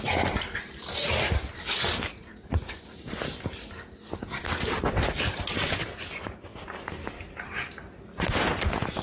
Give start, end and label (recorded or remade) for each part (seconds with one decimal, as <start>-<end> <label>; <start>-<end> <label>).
0.0-2.1 recorded; 2.1-2.7 remade; 2.7-9.0 recorded